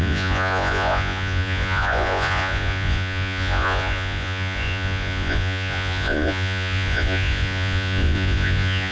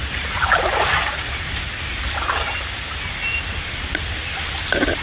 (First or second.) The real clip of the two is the second